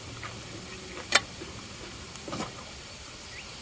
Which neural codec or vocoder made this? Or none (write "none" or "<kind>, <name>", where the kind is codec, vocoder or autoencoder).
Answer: vocoder, BigVGAN v2